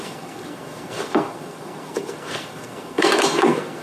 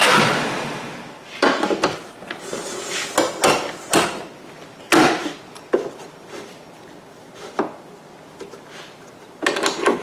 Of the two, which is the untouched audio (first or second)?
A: second